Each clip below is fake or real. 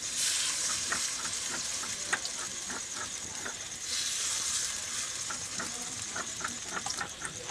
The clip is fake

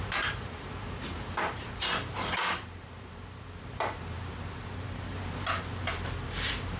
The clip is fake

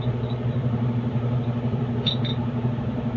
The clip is fake